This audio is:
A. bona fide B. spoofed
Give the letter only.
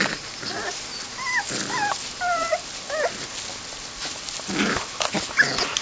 A